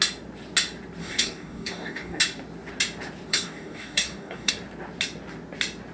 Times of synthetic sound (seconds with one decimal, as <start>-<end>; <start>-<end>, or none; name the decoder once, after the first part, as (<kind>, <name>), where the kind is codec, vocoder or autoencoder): 1.0-2.2 (codec, DAC); 3.3-4.5